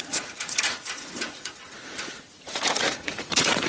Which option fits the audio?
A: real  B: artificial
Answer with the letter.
B